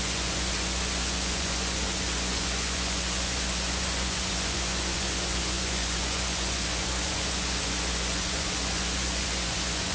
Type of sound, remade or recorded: remade